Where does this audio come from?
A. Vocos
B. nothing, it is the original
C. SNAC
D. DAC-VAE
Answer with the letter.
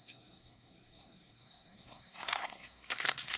C